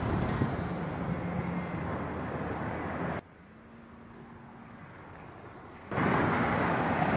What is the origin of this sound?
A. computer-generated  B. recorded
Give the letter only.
B